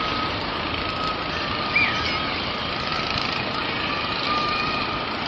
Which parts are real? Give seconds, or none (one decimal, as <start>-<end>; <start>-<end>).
0.0-2.9; 3.9-5.3